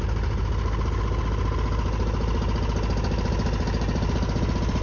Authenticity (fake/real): real